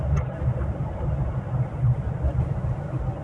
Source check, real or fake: real